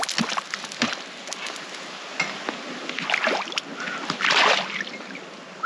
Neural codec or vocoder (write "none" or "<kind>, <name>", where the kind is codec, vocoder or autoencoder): none